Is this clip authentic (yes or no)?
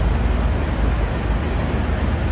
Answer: yes